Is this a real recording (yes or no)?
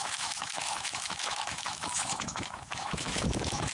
no